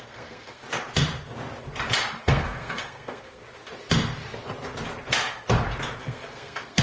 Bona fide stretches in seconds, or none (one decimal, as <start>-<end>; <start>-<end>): 0.6-2.2; 3.4-6.0